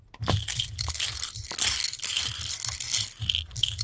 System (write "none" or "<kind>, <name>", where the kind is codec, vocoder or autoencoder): none